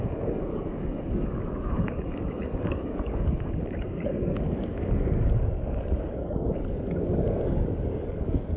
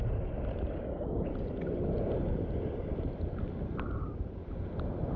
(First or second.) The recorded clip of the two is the second